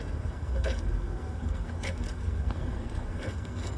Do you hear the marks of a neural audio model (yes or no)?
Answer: yes